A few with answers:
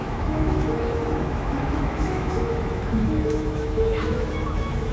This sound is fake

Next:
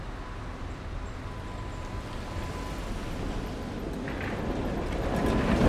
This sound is real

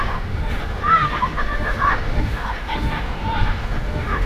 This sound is fake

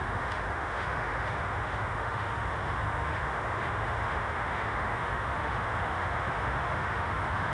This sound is fake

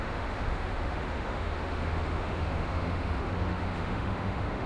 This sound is fake